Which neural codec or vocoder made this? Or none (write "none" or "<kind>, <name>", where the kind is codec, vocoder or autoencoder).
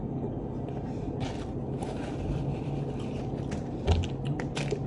none